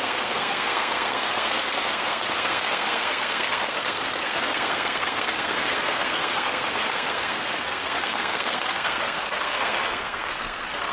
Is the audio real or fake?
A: fake